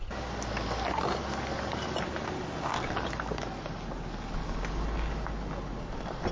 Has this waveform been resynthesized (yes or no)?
no